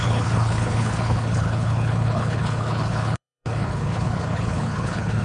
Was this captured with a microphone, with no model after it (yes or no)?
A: no